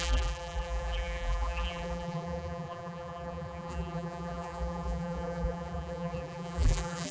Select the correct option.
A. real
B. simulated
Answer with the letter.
B